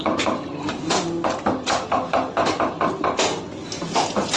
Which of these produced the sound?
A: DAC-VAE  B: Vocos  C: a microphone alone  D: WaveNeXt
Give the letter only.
C